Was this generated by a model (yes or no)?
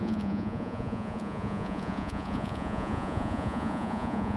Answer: yes